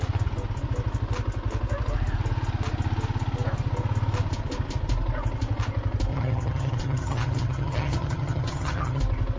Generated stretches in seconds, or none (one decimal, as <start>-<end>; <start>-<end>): 6.1-9.0

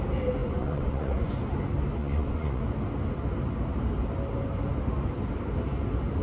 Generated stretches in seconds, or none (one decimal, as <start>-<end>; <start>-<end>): 0.4-1.3; 2.0-2.6

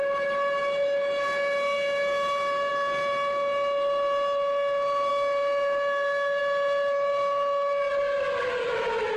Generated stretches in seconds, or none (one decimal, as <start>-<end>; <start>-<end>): none

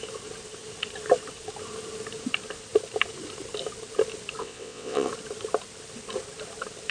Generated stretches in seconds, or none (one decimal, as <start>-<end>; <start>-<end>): 4.4-5.1

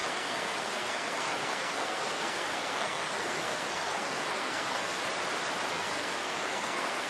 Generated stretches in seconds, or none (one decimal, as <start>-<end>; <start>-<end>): 0.0-5.0; 5.7-7.1

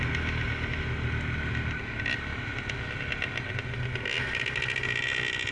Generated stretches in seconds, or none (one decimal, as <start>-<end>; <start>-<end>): none

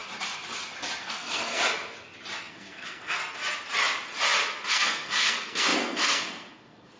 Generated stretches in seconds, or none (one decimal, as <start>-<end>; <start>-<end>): 1.0-1.6; 2.5-3.2; 4.7-7.0

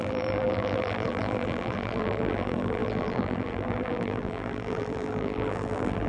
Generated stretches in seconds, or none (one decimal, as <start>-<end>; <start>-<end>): 0.0-6.1